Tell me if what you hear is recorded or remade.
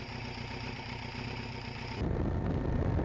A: recorded